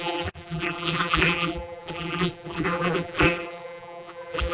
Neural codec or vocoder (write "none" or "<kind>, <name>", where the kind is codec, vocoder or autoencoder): vocoder, BigVGAN v2